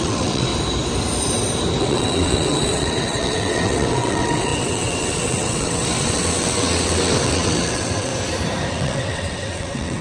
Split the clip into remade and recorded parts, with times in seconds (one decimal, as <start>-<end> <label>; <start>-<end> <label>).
0.0-0.5 remade; 0.5-1.8 recorded; 1.8-8.1 remade; 8.1-8.7 recorded; 8.7-10.0 remade